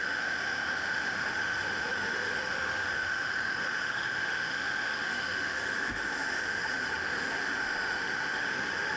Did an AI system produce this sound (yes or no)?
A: yes